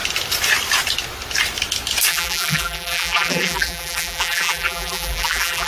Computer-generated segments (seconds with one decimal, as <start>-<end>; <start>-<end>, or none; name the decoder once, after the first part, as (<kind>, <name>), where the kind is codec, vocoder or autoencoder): 2.1-5.7 (vocoder, BigVGAN v2)